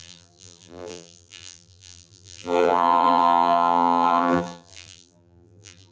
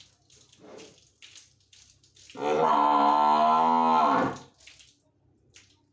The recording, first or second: second